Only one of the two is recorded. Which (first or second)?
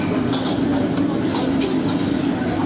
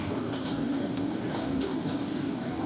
first